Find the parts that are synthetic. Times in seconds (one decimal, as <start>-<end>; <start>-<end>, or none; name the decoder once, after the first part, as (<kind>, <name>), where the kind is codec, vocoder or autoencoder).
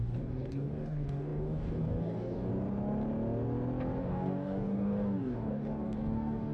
0.0-2.5 (codec, DAC); 4.0-6.5